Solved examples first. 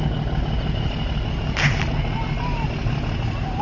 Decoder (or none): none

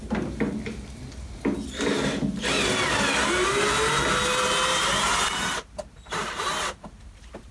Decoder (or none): none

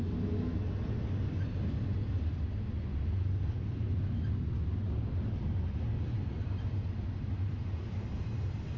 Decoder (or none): none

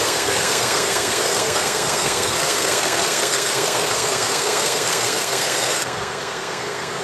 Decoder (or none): codec, SNAC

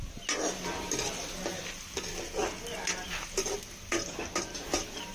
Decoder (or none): none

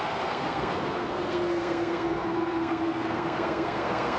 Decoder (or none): codec, SNAC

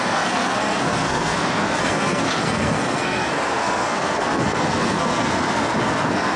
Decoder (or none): codec, SNAC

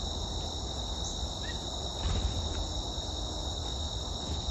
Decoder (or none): none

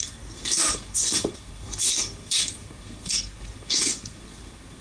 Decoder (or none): codec, SNAC